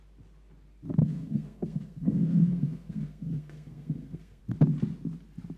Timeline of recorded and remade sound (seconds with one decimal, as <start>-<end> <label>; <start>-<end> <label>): 0.0-1.0 recorded; 1.0-4.4 remade; 4.4-5.6 recorded